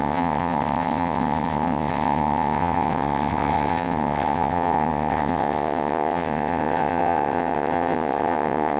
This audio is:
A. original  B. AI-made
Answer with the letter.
B